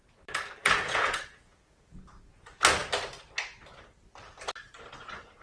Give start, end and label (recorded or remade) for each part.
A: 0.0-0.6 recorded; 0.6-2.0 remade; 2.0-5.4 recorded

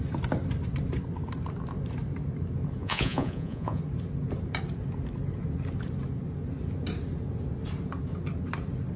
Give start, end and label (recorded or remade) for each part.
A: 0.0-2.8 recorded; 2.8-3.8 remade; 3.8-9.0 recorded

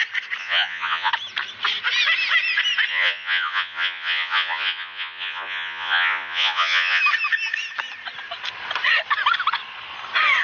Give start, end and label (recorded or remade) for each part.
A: 0.0-0.4 recorded; 0.4-1.1 remade; 1.1-2.9 recorded; 2.9-7.0 remade; 7.0-10.4 recorded

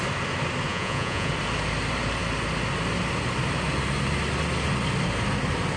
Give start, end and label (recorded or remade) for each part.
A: 0.0-0.7 recorded; 0.7-1.3 remade; 1.3-5.8 recorded